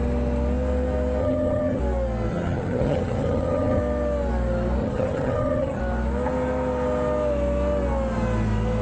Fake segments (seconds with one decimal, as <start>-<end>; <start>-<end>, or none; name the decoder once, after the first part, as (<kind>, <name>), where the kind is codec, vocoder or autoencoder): 1.2-1.8 (vocoder, HiFi-GAN); 2.3-3.8; 4.8-5.8